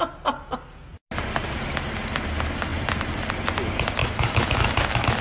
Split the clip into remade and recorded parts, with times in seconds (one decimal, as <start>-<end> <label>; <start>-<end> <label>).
0.0-4.0 recorded; 4.0-5.2 remade